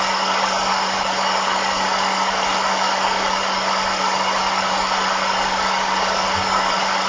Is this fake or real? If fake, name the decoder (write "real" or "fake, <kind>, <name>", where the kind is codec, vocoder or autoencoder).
fake, codec, DAC